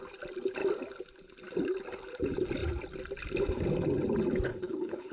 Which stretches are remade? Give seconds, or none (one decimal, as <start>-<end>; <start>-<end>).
4.5-5.1